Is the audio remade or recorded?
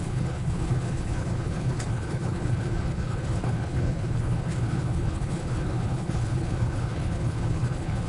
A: remade